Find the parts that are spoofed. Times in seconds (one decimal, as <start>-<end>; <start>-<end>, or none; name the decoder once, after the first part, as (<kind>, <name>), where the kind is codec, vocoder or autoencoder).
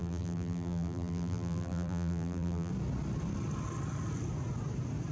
0.0-2.7 (vocoder, BigVGAN v2)